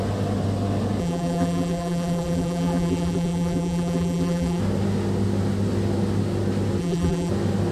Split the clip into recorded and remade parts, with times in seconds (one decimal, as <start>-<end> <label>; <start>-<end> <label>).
0.0-1.0 recorded; 1.0-4.6 remade; 4.6-6.8 recorded; 6.8-7.3 remade; 7.3-7.7 recorded